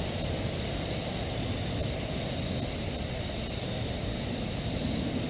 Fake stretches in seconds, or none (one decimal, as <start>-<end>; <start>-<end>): none